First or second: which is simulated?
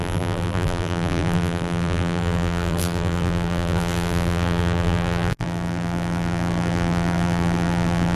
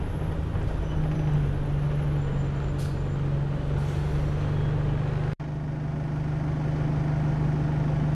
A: first